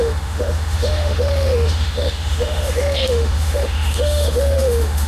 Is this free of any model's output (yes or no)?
no